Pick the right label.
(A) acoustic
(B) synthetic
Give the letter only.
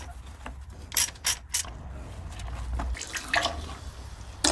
A